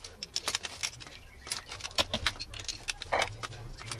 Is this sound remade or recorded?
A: recorded